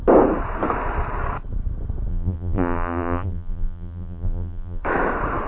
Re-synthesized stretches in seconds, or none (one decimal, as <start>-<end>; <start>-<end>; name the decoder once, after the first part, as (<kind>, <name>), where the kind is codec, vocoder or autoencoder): 2.1-4.8 (vocoder, BigVGAN v2)